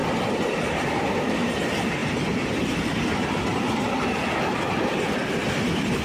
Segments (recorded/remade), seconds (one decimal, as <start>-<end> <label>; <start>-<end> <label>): 0.0-6.0 recorded